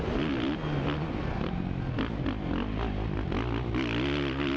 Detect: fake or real real